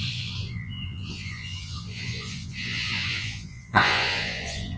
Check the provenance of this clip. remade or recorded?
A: remade